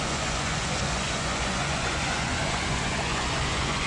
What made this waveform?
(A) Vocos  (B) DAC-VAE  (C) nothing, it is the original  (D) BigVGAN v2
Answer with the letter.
A